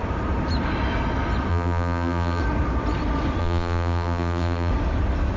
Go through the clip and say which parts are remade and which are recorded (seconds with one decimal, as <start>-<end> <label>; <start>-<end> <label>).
0.0-1.5 recorded; 1.5-2.4 remade; 2.4-3.4 recorded; 3.4-4.7 remade; 4.7-5.4 recorded